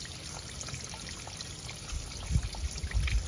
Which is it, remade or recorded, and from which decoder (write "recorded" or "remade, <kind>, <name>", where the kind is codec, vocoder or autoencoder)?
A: recorded